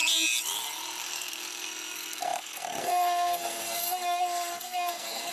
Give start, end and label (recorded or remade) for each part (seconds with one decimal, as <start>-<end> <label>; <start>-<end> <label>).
0.0-1.0 recorded; 1.0-5.3 remade